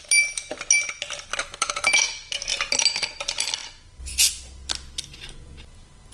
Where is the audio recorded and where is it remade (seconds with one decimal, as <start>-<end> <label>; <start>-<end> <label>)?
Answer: 0.0-1.4 recorded; 1.4-2.3 remade; 2.3-6.1 recorded